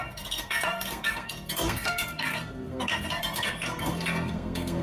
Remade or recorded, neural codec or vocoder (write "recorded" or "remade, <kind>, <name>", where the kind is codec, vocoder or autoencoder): remade, codec, SNAC